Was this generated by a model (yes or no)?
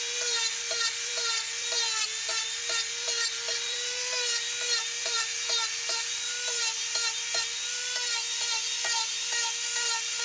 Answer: yes